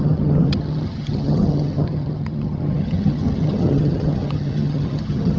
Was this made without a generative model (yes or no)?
no